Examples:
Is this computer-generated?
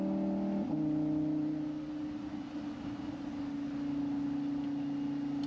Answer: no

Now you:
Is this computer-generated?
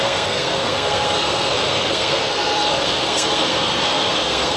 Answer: yes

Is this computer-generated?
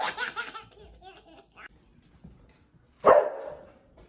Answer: no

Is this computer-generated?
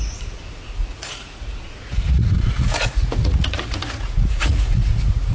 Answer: yes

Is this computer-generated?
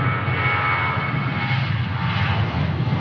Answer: no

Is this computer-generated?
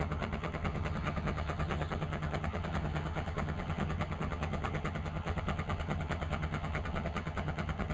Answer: yes